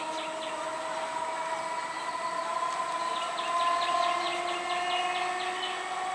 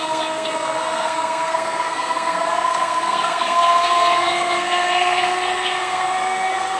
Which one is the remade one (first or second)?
second